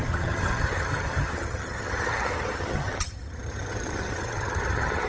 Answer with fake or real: fake